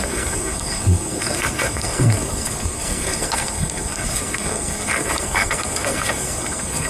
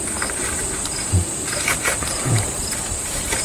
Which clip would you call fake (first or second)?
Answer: first